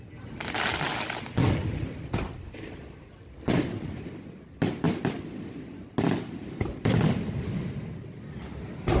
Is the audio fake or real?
real